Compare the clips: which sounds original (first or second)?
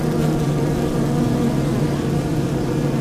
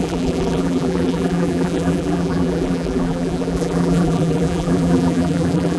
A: first